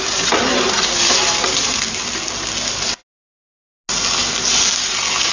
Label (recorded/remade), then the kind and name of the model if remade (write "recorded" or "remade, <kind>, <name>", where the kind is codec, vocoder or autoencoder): recorded